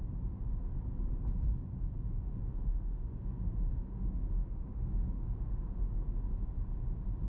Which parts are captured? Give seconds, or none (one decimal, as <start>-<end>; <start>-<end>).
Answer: 0.0-1.7; 5.9-7.3